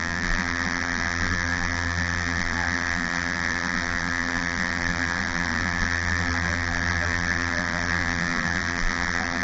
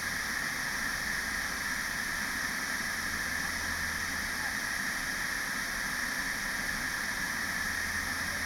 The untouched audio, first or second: second